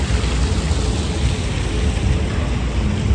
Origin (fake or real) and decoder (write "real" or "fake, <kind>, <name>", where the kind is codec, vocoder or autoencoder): real